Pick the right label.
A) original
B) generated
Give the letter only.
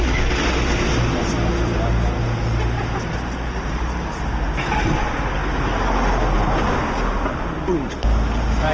A